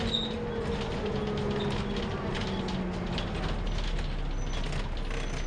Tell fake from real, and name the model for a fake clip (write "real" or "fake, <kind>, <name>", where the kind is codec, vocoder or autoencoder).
real